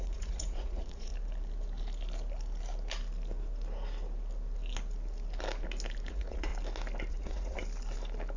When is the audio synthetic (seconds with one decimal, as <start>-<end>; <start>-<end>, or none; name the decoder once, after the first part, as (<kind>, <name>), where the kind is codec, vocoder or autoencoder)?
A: 0.0-1.1 (vocoder, Vocos); 6.1-6.5; 7.1-7.6